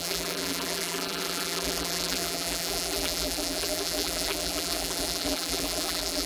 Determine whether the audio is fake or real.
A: fake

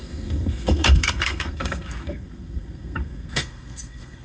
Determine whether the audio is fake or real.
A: fake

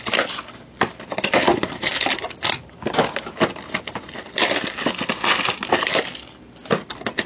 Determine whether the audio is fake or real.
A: real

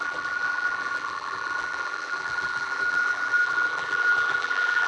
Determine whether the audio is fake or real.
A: fake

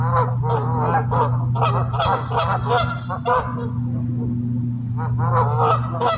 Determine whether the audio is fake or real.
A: real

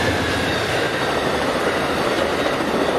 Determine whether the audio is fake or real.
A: real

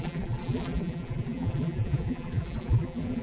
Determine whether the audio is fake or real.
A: fake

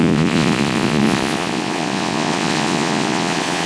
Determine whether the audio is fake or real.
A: fake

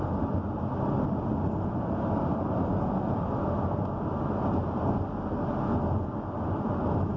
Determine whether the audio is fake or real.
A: real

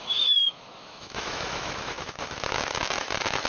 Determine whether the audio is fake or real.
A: fake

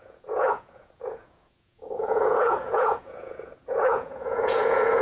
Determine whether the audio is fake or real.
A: fake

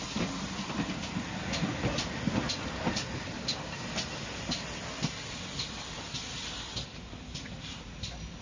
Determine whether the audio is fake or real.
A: real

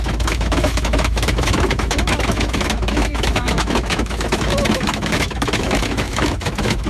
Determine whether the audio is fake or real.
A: fake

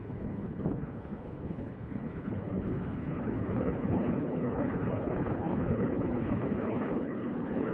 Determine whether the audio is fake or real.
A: fake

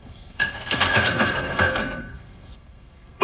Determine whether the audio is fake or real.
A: fake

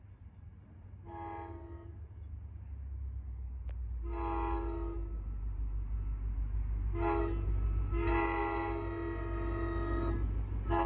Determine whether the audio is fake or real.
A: real